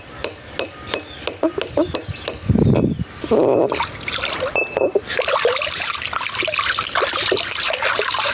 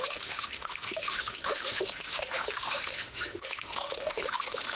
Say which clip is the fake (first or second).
second